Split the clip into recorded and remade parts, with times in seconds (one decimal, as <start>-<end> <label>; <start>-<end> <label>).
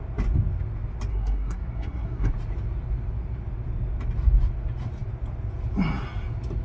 0.0-1.1 recorded; 1.1-2.3 remade; 2.3-6.6 recorded